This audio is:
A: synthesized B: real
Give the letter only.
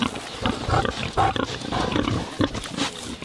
B